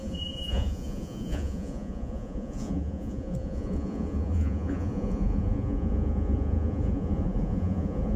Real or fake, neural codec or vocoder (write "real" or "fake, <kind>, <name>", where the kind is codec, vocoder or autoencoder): fake, vocoder, Vocos